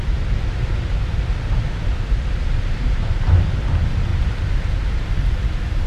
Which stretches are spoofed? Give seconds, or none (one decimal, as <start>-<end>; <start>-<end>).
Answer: none